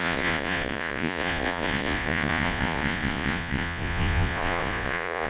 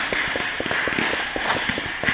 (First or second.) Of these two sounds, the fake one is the first